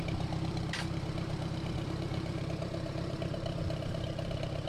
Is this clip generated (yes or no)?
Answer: yes